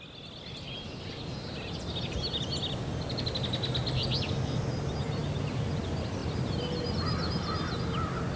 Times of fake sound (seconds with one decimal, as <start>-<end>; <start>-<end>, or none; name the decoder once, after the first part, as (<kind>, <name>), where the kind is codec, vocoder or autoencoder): none